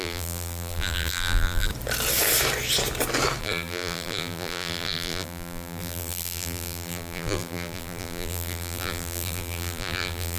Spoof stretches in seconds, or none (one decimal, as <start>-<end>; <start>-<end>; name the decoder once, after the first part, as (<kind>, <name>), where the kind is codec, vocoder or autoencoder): 0.0-1.7 (vocoder, BigVGAN v2); 3.4-10.4